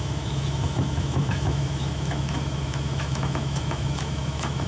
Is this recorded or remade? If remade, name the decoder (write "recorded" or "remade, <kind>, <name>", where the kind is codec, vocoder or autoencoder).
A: remade, autoencoder, DAC-VAE